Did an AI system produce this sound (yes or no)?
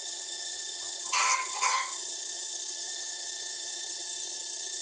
yes